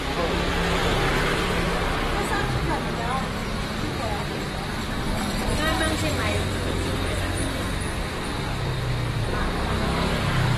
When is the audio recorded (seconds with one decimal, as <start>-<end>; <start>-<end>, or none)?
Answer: 0.0-3.4; 8.4-10.6